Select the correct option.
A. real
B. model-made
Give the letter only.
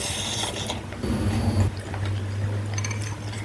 A